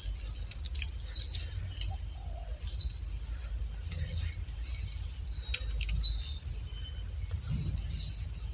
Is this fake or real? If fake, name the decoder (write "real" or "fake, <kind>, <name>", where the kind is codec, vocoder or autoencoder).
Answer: real